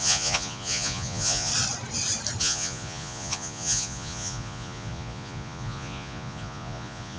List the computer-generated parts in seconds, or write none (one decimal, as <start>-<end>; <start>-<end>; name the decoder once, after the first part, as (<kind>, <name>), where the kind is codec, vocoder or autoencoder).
0.0-1.5 (vocoder, Vocos); 2.4-7.2